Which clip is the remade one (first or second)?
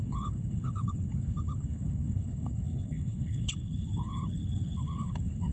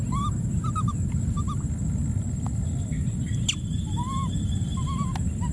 first